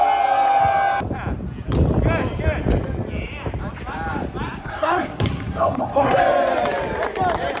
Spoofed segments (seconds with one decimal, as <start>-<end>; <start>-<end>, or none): 4.6-6.2